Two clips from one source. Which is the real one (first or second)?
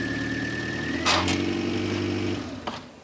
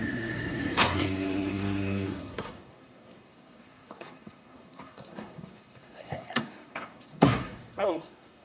first